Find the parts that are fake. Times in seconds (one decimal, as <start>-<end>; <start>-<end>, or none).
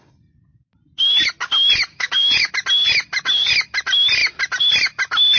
1.9-2.5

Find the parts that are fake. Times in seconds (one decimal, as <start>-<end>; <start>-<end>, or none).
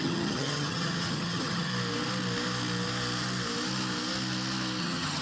0.0-1.7; 4.8-5.2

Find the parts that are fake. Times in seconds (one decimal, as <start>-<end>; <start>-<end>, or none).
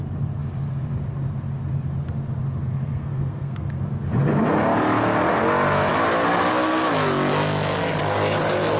2.7-3.8